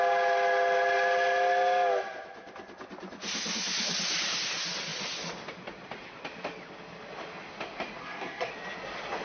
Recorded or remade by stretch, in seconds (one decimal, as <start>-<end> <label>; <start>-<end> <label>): 0.0-8.0 recorded; 8.0-8.5 remade; 8.5-9.2 recorded